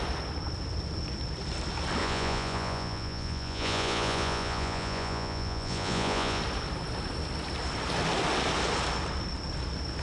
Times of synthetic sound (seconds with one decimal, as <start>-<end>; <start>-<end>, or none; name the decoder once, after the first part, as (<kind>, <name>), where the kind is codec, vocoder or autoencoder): 2.0-6.4 (vocoder, Vocos)